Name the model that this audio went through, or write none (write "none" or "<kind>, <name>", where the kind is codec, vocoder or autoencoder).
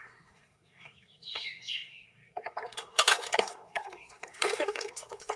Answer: codec, SNAC